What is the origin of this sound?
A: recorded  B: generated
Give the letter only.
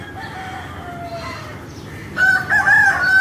A